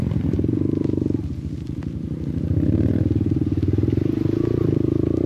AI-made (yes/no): no